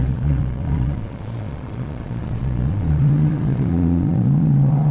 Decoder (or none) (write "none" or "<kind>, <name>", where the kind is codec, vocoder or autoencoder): vocoder, Vocos